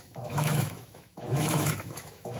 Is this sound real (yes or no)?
no